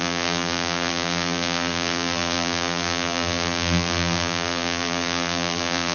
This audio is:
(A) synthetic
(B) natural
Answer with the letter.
A